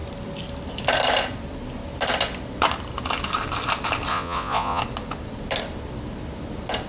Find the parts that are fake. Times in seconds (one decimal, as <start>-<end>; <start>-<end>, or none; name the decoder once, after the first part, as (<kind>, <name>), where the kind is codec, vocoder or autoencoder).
4.1-4.8 (vocoder, Vocos)